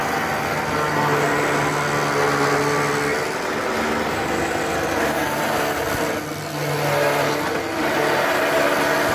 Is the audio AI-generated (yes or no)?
no